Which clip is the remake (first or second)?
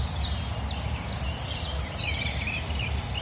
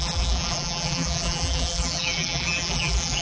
second